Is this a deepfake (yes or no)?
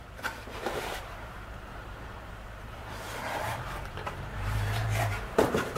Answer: yes